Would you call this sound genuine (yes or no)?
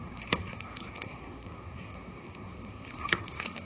no